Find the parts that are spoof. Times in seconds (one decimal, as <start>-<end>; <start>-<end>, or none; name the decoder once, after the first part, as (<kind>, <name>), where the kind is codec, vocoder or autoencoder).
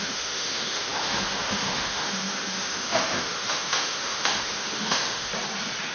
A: 0.0-5.3 (autoencoder, DAC-VAE)